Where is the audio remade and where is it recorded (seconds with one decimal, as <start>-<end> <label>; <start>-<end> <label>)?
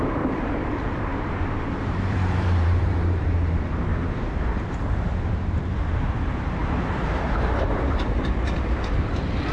0.0-3.9 remade; 3.9-4.4 recorded; 4.4-9.5 remade